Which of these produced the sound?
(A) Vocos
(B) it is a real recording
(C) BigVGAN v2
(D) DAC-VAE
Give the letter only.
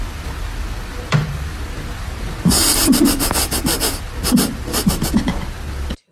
B